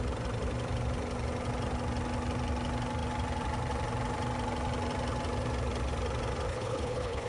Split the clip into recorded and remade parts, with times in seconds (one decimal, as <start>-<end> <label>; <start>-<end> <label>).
0.0-6.5 recorded; 6.5-7.3 remade